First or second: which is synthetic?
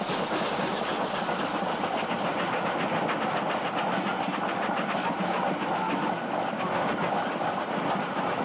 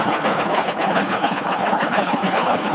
second